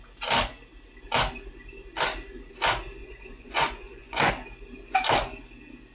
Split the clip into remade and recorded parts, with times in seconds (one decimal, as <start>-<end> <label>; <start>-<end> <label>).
0.0-3.0 recorded; 3.0-4.3 remade; 4.3-5.9 recorded

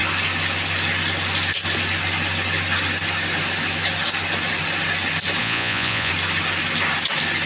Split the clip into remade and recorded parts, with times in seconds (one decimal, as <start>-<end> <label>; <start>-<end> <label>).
0.0-5.4 recorded; 5.4-6.1 remade; 6.1-7.5 recorded

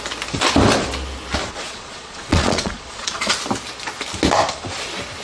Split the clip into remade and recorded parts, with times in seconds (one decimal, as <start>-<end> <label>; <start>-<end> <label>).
0.0-1.4 recorded; 1.4-3.3 remade; 3.3-5.2 recorded

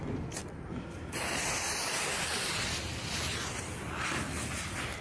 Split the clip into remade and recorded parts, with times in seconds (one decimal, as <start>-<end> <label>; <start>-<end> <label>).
0.0-5.0 recorded